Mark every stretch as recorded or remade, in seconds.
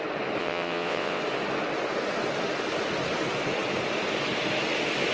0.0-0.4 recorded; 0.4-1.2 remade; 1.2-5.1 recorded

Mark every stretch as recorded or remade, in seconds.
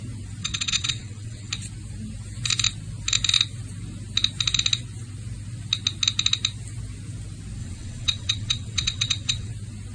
0.0-0.4 recorded; 0.4-1.5 remade; 1.5-7.6 recorded; 7.6-9.5 remade; 9.5-9.9 recorded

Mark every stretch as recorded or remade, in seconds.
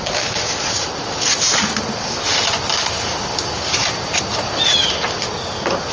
0.0-5.9 recorded